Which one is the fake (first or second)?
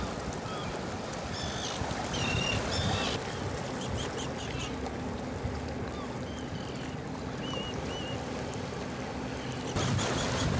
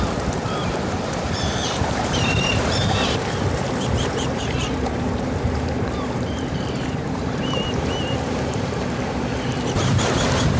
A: second